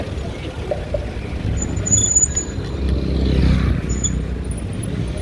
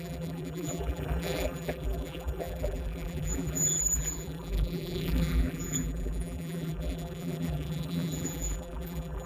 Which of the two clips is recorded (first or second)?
first